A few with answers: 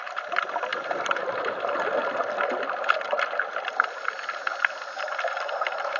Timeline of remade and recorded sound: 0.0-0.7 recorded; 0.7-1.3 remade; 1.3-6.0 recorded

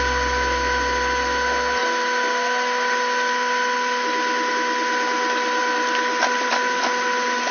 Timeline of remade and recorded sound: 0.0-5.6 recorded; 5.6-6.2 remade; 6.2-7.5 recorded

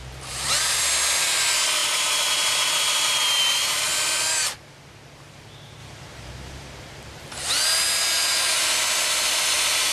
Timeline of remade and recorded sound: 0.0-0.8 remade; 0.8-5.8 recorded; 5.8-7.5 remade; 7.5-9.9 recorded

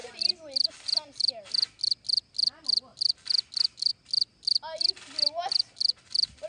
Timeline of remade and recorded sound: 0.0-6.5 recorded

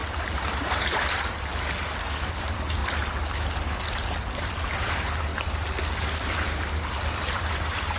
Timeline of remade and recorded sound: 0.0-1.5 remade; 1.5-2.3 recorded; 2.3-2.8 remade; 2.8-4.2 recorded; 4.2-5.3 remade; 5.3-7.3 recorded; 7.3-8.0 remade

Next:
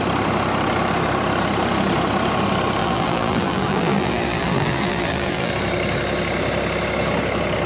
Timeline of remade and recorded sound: 0.0-2.8 recorded; 2.8-5.5 remade; 5.5-7.7 recorded